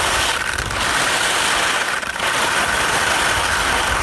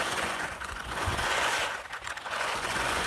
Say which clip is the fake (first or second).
second